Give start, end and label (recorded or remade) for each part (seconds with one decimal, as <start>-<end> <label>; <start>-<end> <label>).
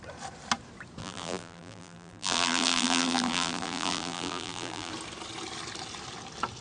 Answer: 0.0-1.0 recorded; 1.0-4.9 remade; 4.9-6.6 recorded